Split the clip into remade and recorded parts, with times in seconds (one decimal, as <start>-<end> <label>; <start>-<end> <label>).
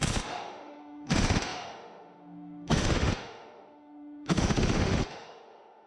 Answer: 0.0-5.9 remade